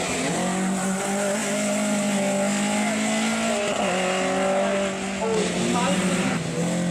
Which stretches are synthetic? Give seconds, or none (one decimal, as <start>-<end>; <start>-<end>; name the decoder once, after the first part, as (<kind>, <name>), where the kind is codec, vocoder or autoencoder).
none